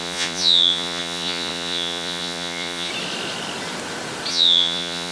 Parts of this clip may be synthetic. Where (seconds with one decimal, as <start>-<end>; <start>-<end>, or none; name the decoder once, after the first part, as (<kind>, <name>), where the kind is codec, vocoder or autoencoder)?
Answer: 0.0-2.9 (vocoder, Vocos); 4.3-5.1